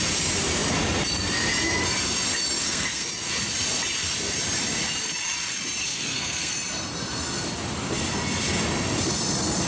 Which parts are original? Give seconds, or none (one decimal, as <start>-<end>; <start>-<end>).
0.0-2.6; 3.1-5.9; 6.5-9.7